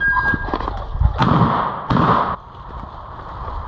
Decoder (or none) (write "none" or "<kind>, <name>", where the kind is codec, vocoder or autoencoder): none